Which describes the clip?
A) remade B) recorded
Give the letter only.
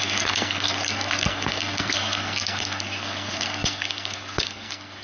A